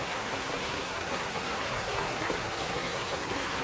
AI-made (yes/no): yes